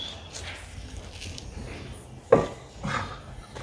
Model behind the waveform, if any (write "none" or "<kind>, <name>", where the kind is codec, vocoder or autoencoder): none